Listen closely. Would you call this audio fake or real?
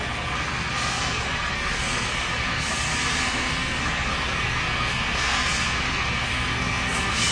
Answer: fake